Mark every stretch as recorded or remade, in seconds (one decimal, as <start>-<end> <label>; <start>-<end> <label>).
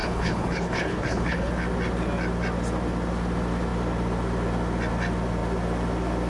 0.0-1.5 remade; 1.5-6.3 recorded